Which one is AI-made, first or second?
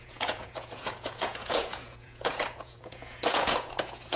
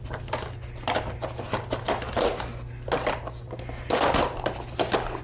first